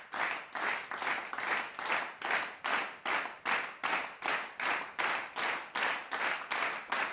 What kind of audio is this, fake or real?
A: real